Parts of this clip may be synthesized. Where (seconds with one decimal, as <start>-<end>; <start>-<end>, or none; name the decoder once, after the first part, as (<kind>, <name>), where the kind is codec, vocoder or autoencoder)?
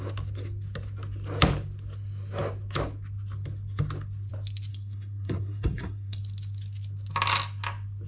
4.7-6.2 (codec, SNAC)